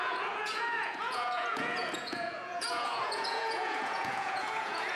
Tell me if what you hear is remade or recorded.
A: remade